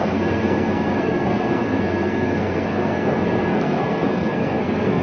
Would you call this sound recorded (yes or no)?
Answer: no